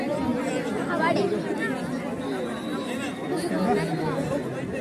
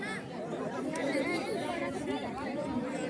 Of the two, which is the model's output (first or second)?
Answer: second